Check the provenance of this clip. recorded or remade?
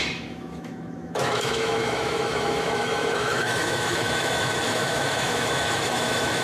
remade